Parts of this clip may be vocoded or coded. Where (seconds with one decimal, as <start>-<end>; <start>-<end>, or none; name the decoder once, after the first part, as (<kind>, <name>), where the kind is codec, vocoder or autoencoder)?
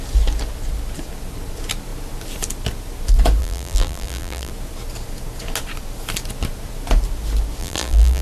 3.4-4.5 (vocoder, BigVGAN v2); 7.6-8.2